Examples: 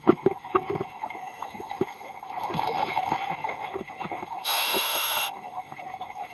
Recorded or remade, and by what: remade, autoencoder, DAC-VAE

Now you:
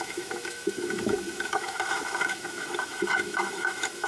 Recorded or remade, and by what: remade, autoencoder, DAC-VAE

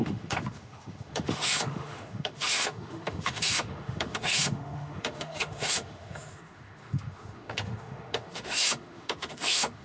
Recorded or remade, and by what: remade, autoencoder, DAC-VAE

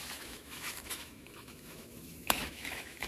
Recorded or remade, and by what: remade, autoencoder, DAC-VAE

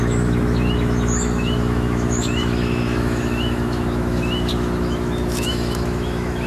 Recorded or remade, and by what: remade, autoencoder, DAC-VAE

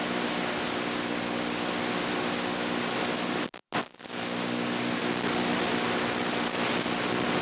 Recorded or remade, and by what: recorded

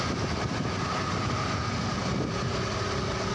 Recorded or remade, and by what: recorded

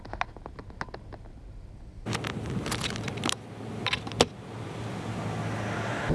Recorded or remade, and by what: recorded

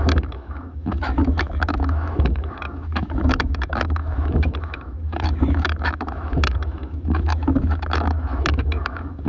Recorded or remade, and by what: remade, autoencoder, DAC-VAE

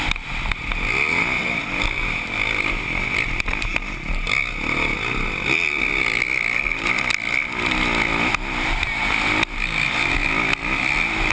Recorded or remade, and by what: recorded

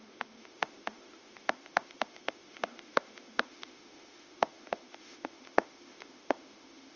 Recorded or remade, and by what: remade, autoencoder, DAC-VAE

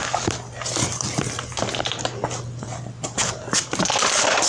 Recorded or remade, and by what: recorded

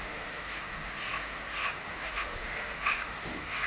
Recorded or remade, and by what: remade, autoencoder, DAC-VAE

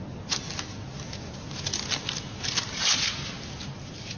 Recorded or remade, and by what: recorded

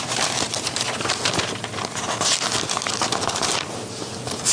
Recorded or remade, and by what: recorded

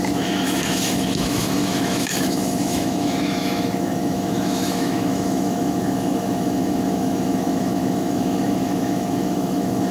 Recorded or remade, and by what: remade, autoencoder, DAC-VAE